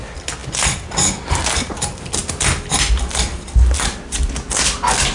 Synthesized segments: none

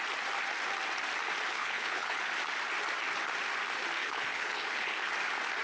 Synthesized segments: 1.5-2.2; 4.0-5.1

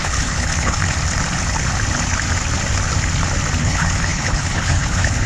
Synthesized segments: 0.0-0.8; 3.6-5.3

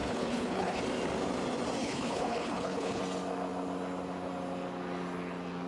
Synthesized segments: 0.0-0.8; 1.8-3.0

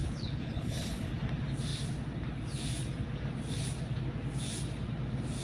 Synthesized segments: 0.0-1.1

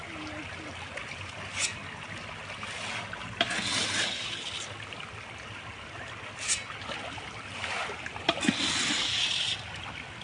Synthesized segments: none